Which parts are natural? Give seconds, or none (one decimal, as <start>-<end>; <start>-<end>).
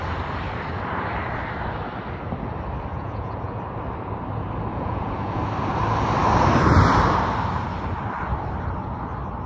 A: 0.0-2.9; 3.6-4.7; 5.4-9.5